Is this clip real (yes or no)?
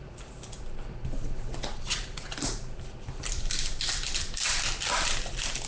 yes